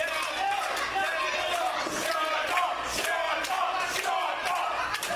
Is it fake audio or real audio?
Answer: real